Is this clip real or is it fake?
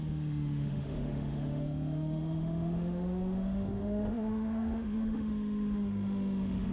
fake